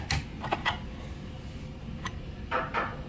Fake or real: real